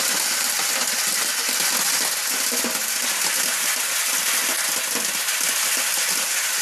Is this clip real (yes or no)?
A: yes